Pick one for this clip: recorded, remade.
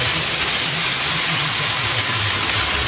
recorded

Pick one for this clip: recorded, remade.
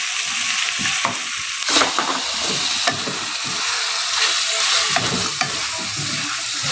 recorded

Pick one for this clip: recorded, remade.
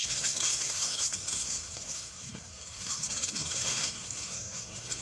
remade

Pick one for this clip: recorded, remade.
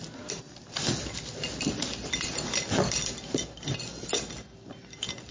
recorded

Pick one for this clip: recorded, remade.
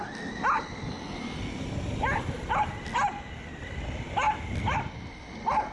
recorded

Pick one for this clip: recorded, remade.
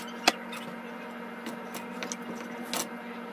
recorded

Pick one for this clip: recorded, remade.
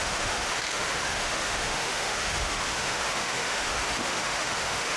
remade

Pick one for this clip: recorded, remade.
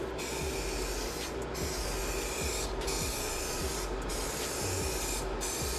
recorded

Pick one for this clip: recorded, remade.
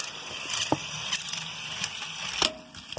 recorded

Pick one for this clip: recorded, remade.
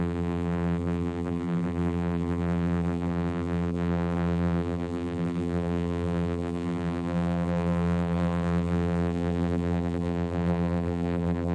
remade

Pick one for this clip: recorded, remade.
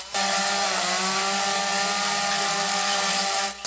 recorded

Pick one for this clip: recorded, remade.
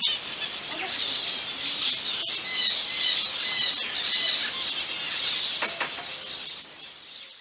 recorded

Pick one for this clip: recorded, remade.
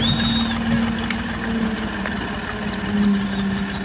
recorded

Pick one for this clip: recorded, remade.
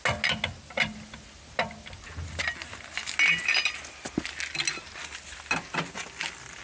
recorded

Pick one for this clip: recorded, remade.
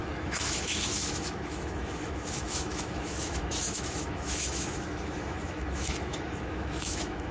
remade